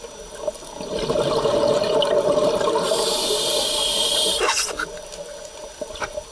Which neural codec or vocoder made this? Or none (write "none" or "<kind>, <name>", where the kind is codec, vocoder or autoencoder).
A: none